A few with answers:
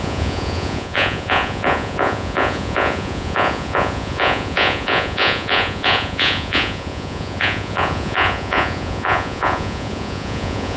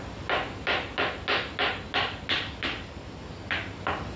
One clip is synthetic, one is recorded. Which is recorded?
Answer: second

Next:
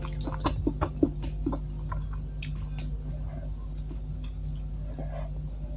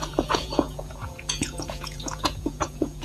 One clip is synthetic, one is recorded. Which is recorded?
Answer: first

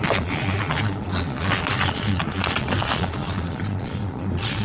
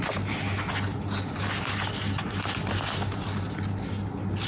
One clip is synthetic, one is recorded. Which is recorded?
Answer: second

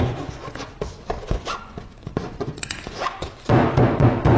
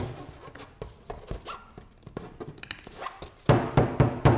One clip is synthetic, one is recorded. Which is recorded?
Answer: second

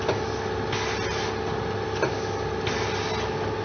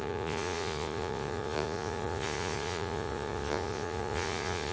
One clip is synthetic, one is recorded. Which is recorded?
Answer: first